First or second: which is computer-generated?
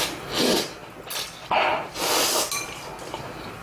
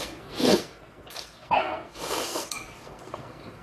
second